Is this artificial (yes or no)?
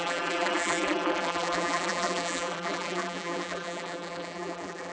yes